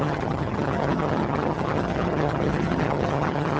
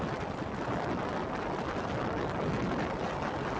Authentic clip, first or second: second